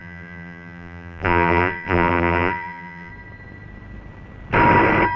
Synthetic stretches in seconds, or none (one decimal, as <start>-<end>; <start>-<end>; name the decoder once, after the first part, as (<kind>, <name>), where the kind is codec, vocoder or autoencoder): 0.0-3.1 (vocoder, BigVGAN v2)